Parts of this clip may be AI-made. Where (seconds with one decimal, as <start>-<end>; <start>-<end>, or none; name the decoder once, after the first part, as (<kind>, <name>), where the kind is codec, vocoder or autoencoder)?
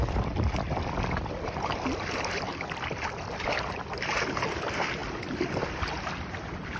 0.0-4.1 (vocoder, BigVGAN v2); 5.0-6.8